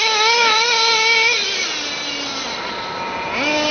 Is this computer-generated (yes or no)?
no